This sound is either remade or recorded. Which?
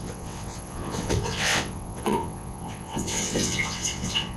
remade